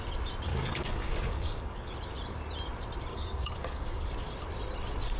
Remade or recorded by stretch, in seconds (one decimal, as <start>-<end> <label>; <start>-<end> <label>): 0.0-0.5 recorded; 0.5-1.9 remade; 1.9-3.1 recorded; 3.1-4.1 remade; 4.1-5.2 recorded